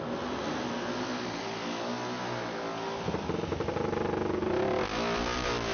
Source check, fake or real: real